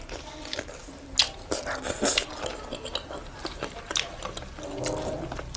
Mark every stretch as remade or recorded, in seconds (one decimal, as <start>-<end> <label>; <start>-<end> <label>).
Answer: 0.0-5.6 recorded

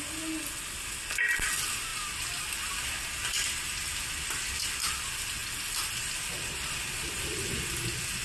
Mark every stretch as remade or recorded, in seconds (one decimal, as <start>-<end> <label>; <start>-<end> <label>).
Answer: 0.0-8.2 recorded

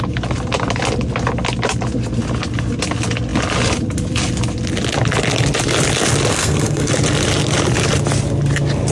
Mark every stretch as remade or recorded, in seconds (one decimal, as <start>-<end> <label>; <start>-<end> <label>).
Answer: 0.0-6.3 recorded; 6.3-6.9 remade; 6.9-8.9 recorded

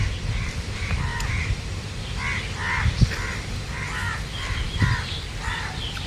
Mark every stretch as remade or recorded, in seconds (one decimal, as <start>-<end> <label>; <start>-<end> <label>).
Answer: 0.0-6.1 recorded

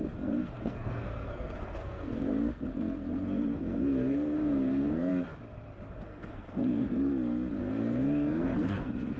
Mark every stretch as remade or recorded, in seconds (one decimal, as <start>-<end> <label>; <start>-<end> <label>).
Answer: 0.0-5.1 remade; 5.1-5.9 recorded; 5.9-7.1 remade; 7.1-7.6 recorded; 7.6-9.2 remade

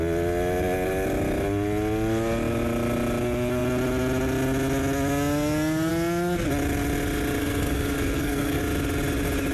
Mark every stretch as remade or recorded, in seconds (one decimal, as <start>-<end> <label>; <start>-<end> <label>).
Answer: 0.0-7.4 recorded; 7.4-8.6 remade; 8.6-9.5 recorded

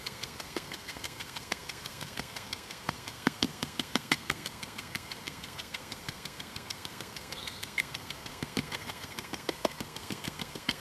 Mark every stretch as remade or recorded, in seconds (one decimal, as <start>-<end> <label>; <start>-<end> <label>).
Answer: 0.0-10.8 remade

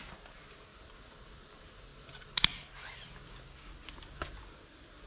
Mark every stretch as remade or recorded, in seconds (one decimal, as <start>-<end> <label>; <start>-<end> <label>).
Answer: 0.0-5.1 recorded